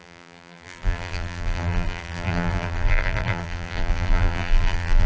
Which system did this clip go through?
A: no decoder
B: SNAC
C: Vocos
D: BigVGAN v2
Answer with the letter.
D